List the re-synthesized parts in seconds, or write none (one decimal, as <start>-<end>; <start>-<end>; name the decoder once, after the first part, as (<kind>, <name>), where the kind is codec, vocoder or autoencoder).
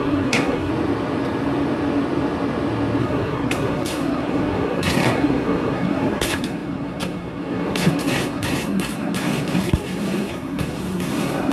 0.0-0.7 (codec, SNAC); 3.0-11.5